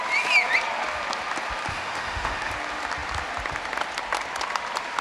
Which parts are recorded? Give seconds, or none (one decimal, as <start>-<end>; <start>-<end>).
0.0-1.7; 2.5-5.0